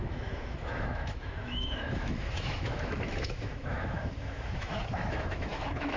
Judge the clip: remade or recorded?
remade